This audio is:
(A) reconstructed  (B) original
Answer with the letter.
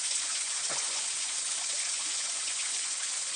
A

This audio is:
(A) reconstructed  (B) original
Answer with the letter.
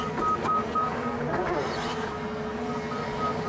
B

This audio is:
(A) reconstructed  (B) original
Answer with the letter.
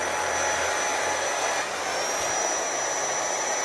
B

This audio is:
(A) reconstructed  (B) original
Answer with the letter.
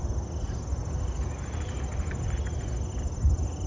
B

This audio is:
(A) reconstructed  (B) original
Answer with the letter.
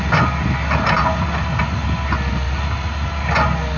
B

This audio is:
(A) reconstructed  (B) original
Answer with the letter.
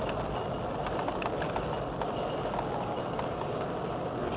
B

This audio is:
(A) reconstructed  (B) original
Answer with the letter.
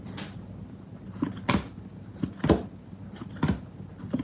B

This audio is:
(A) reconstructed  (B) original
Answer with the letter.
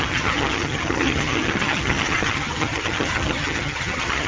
A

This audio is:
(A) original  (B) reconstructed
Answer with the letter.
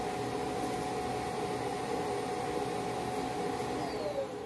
A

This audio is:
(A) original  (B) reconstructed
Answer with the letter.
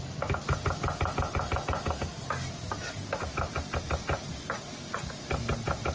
A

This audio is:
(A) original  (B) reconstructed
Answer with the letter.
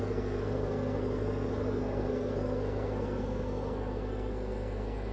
B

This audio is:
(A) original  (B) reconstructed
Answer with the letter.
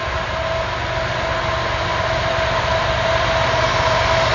A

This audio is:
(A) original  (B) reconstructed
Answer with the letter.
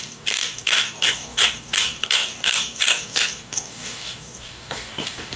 B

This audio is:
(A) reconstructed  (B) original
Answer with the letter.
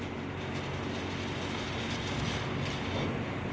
B